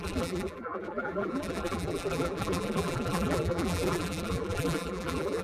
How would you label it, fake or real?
fake